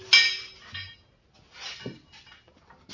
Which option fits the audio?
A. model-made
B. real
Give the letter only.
B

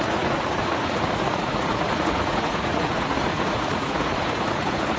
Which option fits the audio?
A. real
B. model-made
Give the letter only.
B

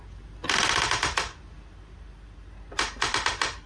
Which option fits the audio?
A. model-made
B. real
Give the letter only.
B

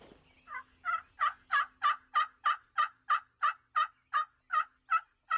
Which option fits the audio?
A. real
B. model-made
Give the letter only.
A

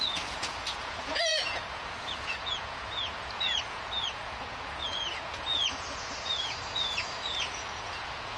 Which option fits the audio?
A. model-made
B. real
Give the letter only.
A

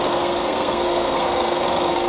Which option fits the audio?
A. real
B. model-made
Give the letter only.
B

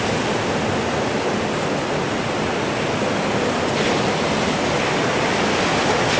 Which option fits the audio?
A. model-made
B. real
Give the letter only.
B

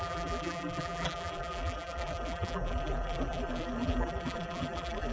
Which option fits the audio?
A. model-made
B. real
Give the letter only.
A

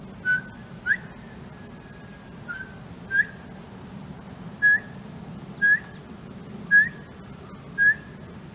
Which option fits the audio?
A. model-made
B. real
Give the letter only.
B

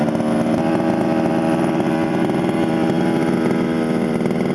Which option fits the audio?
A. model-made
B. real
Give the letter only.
B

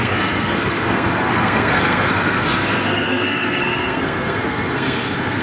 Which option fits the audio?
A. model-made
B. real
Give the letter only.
A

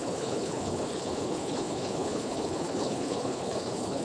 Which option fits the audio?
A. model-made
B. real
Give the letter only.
A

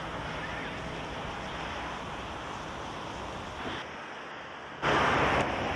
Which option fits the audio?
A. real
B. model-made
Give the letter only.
A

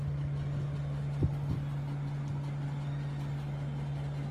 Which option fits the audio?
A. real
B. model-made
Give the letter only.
A